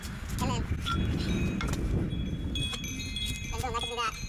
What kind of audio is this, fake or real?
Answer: real